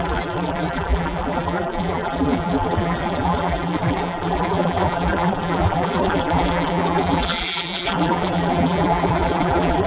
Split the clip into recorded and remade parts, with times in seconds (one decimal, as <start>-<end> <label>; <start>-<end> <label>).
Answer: 0.0-9.9 remade